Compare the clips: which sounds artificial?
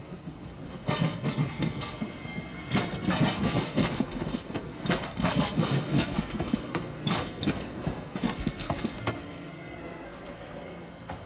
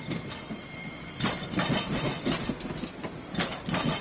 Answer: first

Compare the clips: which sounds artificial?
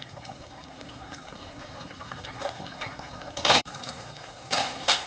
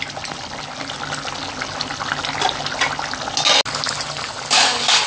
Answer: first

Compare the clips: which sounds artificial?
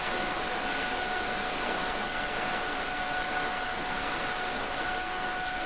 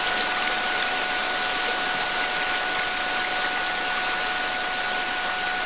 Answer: first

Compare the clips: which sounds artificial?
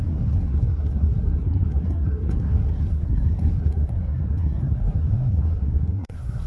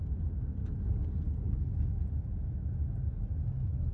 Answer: first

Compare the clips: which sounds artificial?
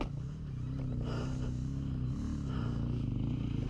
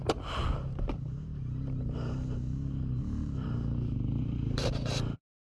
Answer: second